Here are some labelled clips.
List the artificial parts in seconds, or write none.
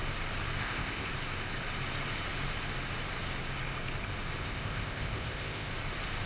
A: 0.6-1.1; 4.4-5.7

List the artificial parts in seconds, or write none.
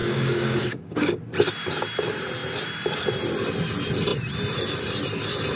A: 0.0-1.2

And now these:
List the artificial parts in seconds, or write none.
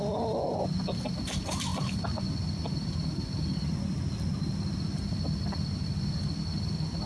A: none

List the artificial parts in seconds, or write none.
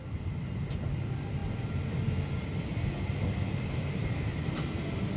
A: none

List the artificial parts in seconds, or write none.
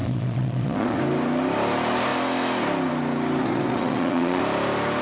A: 0.0-1.0; 3.4-4.4